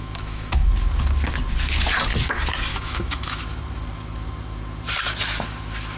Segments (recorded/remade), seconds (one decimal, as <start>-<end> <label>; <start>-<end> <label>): 0.0-0.7 remade; 0.7-2.7 recorded; 2.7-3.4 remade; 3.4-6.0 recorded